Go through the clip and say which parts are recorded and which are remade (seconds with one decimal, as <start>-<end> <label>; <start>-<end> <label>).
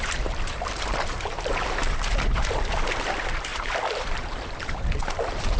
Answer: 0.0-5.6 remade